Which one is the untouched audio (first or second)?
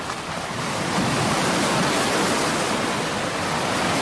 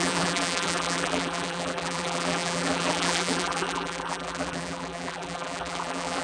first